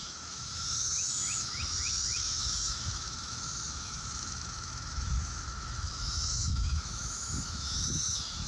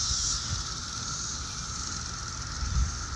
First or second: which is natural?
second